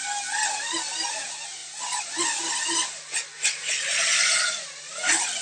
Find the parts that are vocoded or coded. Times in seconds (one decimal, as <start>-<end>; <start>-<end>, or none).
4.0-4.5

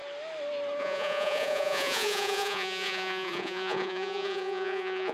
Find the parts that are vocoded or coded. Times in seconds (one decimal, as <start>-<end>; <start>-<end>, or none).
0.8-5.1